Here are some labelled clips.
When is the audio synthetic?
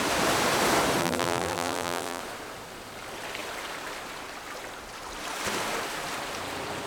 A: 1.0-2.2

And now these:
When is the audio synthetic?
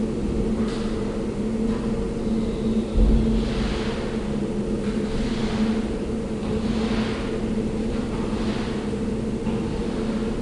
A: none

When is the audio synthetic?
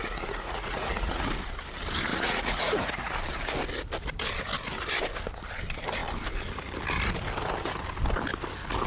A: 0.0-1.3; 2.1-3.1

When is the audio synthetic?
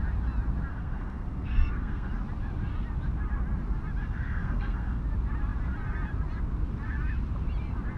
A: 0.7-2.1; 4.0-5.0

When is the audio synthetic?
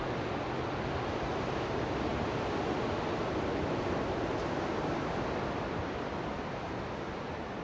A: none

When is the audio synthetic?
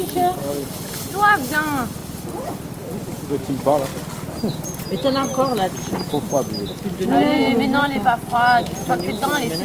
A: none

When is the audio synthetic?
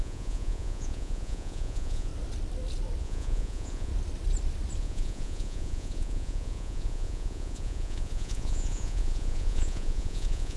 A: 0.0-2.1; 3.0-3.9; 4.8-10.6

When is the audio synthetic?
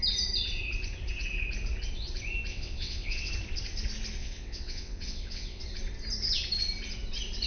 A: 2.5-3.3; 4.2-5.6